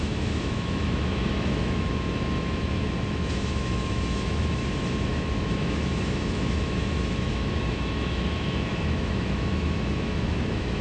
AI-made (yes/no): yes